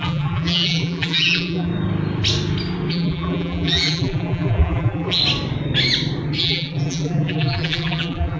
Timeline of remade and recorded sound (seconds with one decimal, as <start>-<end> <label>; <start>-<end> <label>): 0.0-1.7 remade; 1.7-2.9 recorded; 2.9-5.2 remade; 5.2-6.4 recorded; 6.4-8.4 remade